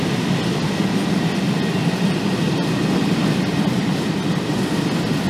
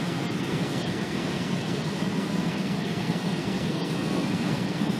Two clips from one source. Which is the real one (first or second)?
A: first